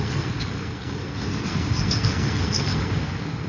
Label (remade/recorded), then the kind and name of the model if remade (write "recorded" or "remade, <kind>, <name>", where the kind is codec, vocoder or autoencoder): remade, codec, SNAC